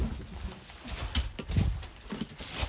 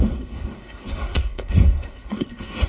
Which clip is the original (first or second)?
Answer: first